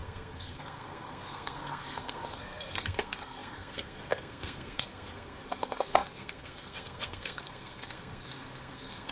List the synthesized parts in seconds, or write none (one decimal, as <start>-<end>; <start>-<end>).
0.0-9.1